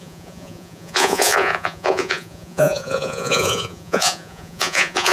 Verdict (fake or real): fake